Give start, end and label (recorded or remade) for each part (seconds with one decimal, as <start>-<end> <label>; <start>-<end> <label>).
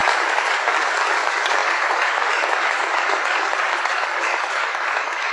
0.0-5.3 remade